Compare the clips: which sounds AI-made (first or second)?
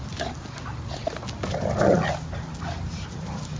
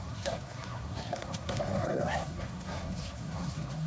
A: second